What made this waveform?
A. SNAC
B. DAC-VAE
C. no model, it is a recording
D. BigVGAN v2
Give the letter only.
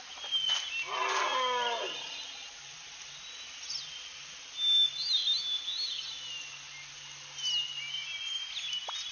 C